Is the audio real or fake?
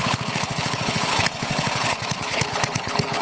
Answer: fake